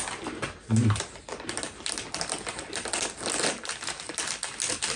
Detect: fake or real real